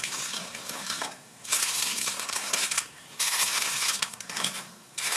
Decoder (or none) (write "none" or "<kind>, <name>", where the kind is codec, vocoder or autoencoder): codec, SNAC